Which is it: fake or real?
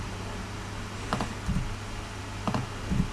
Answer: real